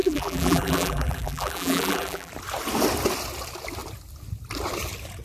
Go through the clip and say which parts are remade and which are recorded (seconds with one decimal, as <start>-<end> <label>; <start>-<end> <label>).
0.0-2.3 remade; 2.3-5.2 recorded